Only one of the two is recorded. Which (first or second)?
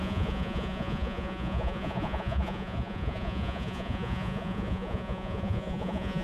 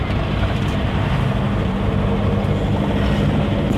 second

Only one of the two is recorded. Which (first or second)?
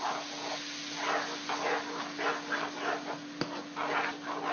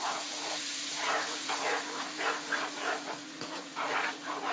first